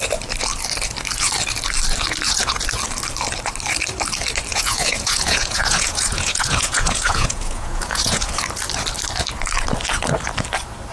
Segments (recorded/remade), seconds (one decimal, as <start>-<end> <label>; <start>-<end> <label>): 0.0-4.5 recorded; 4.5-8.3 remade; 8.3-10.9 recorded